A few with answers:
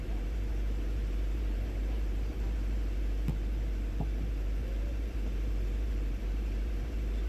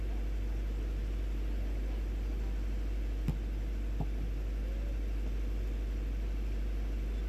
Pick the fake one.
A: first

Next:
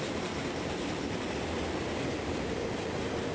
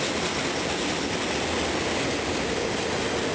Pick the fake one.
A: first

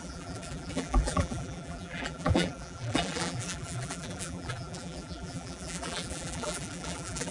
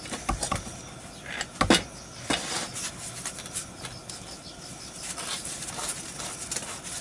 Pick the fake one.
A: first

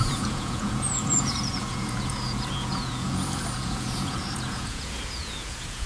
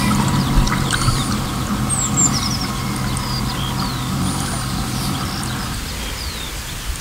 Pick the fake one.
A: first